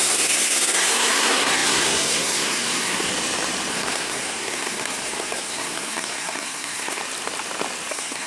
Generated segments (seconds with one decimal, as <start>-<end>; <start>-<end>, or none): 0.0-3.1; 3.7-7.0; 7.9-8.3